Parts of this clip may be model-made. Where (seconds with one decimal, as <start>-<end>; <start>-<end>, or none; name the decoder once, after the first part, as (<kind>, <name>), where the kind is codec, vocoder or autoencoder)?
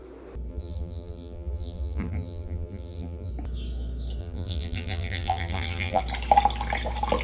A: 0.5-3.3 (vocoder, BigVGAN v2); 4.2-6.0